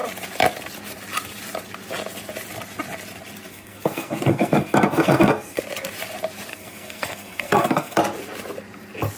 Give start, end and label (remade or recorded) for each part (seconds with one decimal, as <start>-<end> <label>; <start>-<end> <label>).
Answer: 0.0-3.5 recorded; 3.5-5.6 remade; 5.6-6.5 recorded; 6.5-8.0 remade; 8.0-9.2 recorded